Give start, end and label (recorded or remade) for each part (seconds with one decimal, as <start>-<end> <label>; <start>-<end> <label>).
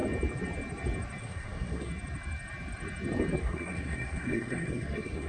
0.0-1.2 recorded; 1.2-1.9 remade; 1.9-3.4 recorded; 3.4-5.3 remade